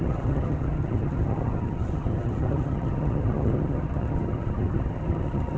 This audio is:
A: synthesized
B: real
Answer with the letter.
A